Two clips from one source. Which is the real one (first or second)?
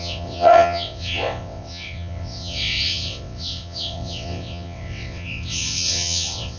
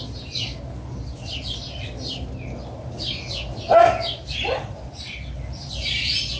second